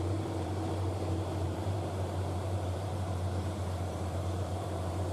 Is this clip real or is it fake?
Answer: fake